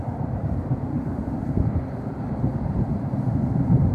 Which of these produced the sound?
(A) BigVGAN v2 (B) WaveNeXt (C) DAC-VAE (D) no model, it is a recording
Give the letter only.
A